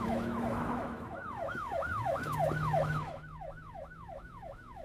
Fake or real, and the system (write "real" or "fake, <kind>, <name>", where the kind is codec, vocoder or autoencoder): fake, autoencoder, DAC-VAE